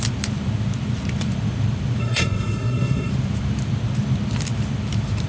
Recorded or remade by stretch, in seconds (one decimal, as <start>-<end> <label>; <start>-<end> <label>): 0.0-2.0 recorded; 2.0-3.1 remade; 3.1-5.3 recorded